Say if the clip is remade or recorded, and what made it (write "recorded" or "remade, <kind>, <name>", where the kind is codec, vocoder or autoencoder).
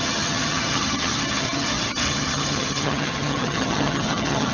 remade, vocoder, HiFi-GAN